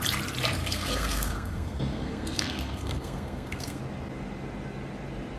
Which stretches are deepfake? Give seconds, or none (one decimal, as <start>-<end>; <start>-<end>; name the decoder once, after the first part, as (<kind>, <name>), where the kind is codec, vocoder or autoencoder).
0.6-3.8 (codec, SNAC)

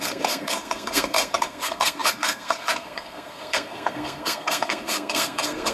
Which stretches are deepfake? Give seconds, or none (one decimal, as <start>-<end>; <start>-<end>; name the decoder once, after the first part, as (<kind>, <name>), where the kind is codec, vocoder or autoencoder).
0.0-5.7 (codec, SNAC)

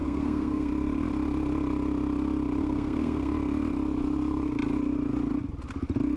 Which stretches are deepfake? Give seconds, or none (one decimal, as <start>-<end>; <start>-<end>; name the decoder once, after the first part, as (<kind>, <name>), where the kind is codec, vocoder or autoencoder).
0.0-0.7 (codec, SNAC); 2.6-3.3

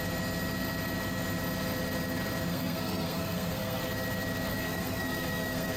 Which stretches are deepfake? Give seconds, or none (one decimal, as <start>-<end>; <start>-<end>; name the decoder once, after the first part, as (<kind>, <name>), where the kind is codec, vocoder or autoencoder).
2.5-3.8 (codec, SNAC); 4.5-5.8

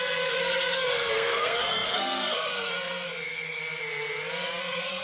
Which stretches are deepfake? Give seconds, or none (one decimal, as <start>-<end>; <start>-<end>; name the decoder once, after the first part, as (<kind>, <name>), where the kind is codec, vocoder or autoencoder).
0.0-3.6 (codec, SNAC); 4.6-5.0

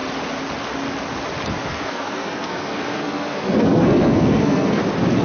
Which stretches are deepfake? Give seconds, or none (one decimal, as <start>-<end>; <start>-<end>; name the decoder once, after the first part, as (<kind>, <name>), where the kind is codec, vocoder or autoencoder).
1.7-4.8 (codec, SNAC)

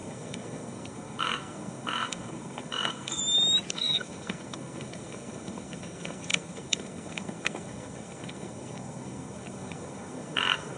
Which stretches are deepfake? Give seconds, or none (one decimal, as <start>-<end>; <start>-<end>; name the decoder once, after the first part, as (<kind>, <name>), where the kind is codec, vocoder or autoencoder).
0.0-3.2 (codec, SNAC); 3.7-10.8

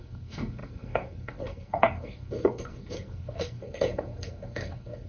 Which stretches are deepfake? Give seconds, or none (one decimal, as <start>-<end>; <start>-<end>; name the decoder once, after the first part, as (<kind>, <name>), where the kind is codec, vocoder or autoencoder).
0.0-5.1 (codec, SNAC)